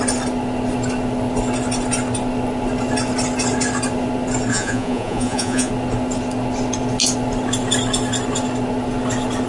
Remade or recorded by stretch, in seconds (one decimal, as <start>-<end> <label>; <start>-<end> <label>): 0.0-4.5 recorded; 4.5-5.7 remade; 5.7-9.5 recorded